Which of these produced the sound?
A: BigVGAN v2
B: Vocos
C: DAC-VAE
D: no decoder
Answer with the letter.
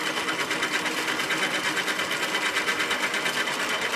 D